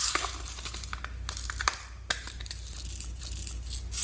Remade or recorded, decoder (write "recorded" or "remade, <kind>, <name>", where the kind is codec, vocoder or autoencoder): recorded